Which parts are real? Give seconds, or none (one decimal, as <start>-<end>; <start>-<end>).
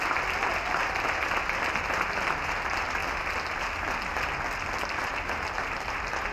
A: 0.0-6.3